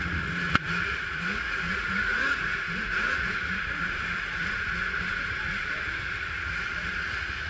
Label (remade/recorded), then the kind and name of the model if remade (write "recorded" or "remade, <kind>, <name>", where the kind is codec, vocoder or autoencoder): remade, vocoder, Vocos